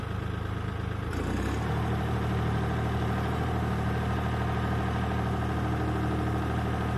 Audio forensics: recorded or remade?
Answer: recorded